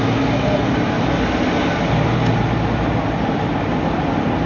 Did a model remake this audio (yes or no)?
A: no